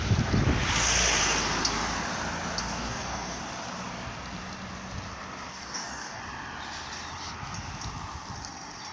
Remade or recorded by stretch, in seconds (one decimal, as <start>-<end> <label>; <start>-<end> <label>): 0.0-2.6 recorded; 2.6-3.4 remade; 3.4-5.5 recorded; 5.5-6.2 remade; 6.2-8.9 recorded